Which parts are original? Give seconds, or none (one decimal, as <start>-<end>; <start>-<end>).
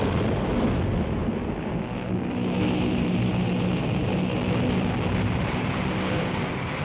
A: 0.0-6.8